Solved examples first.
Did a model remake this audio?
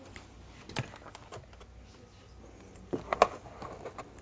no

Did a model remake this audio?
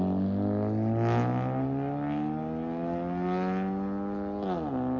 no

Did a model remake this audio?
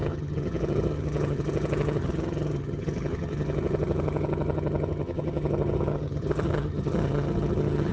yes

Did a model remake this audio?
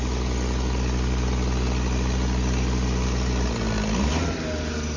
no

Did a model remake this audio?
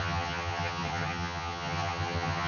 yes